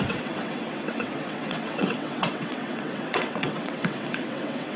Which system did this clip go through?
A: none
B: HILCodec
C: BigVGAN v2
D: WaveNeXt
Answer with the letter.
D